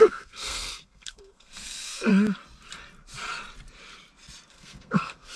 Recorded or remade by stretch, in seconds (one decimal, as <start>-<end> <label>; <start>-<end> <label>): 0.0-2.1 remade; 2.1-4.5 recorded; 4.5-5.4 remade